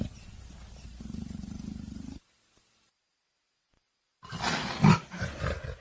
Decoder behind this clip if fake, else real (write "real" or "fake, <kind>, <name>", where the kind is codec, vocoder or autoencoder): real